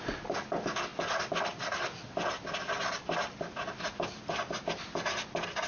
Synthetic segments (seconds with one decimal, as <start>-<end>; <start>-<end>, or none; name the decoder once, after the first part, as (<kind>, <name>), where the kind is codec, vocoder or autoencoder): none